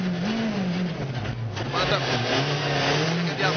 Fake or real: real